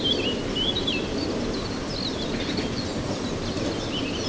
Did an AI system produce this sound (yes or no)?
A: no